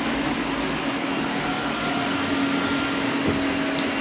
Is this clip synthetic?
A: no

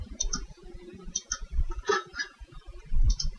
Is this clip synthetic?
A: yes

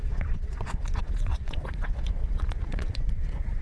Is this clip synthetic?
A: yes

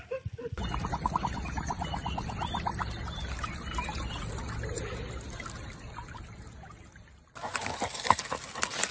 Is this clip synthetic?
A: no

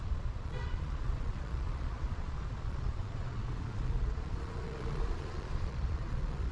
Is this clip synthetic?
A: yes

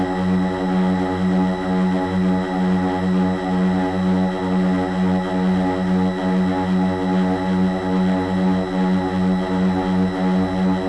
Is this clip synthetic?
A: no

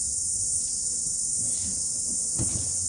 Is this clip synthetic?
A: no